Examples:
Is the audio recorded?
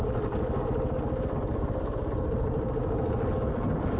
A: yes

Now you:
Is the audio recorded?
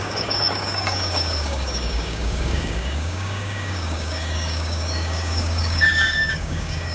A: no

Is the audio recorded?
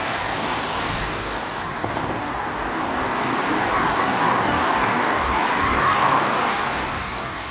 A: no